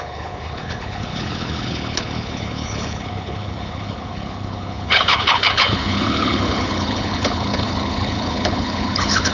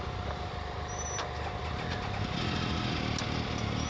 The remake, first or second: first